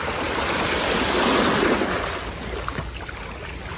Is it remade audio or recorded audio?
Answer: recorded